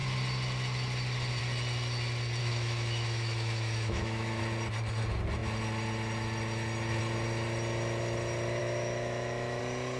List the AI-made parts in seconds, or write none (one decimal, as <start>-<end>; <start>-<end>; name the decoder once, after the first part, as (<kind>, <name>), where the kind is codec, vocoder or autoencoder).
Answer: 2.4-4.4 (autoencoder, DAC-VAE); 8.6-9.6